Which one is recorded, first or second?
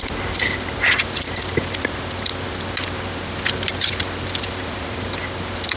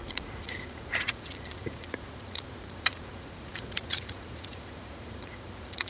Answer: first